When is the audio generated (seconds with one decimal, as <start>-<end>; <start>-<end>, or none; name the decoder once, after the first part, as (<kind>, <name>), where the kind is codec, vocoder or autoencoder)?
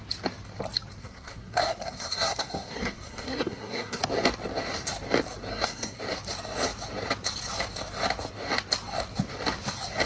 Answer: 1.0-4.0 (codec, SNAC); 5.5-6.0